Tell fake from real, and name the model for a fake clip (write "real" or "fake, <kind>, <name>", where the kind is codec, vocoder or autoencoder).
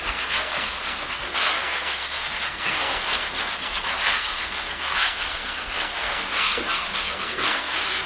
fake, codec, SNAC